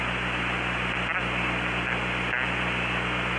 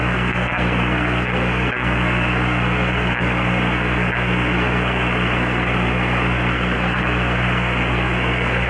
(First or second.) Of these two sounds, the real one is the first